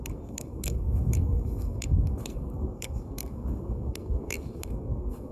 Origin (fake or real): fake